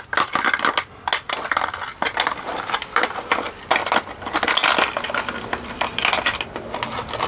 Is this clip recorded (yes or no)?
yes